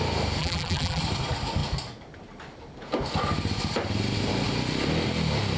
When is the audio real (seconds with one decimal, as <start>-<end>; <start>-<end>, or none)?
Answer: 0.0-0.4; 1.0-5.6